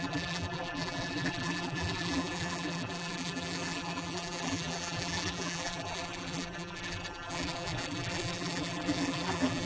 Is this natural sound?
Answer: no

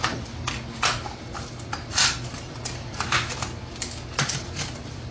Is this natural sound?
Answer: yes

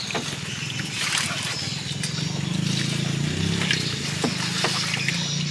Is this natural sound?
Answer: yes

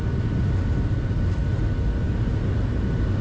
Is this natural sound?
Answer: yes